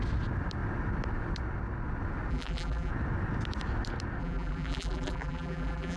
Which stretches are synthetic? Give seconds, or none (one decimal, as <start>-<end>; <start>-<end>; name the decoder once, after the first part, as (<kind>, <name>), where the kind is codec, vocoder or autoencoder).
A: 2.3-2.9 (vocoder, BigVGAN v2); 4.2-6.0